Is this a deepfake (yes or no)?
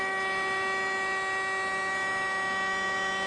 no